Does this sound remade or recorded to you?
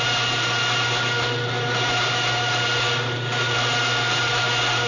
remade